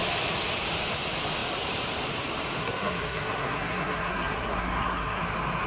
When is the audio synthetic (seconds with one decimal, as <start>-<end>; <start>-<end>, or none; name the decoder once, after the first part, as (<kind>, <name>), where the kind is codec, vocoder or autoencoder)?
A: 2.6-5.2 (codec, SNAC)